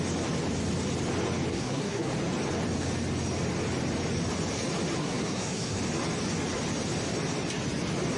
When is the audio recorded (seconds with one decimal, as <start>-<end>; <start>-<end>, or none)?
0.0-1.5; 2.1-5.0; 5.8-8.2